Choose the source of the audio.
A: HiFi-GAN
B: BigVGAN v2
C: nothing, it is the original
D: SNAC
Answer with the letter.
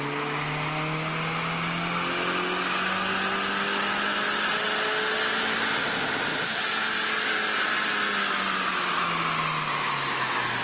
C